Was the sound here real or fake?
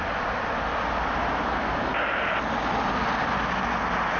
real